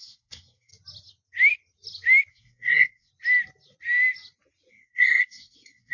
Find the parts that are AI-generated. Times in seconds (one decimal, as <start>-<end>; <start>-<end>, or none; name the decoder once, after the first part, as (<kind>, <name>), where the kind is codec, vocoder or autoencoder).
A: 0.0-0.7 (codec, SNAC); 2.3-3.1; 4.7-5.9